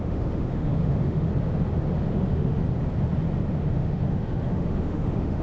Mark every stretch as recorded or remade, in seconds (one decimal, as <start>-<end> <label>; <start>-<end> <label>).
0.0-1.3 remade; 1.3-2.1 recorded; 2.1-2.6 remade; 2.6-3.7 recorded; 3.7-5.4 remade

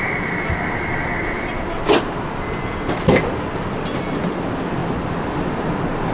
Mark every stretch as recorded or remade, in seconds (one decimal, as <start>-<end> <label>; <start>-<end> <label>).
0.0-6.1 recorded

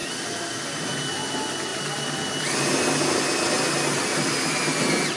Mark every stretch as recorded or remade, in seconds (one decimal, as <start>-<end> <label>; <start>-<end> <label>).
0.0-5.2 recorded